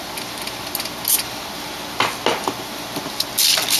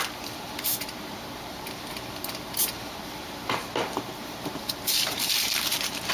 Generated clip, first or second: second